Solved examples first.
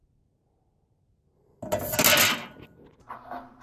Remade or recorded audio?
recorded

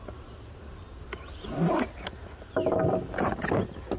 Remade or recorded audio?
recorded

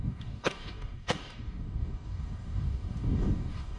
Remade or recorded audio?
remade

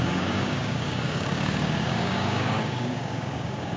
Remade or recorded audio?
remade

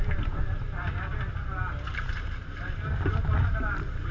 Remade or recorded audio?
recorded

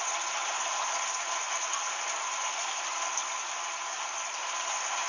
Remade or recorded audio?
recorded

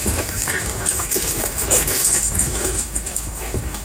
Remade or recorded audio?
remade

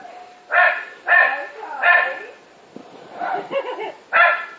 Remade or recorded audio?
recorded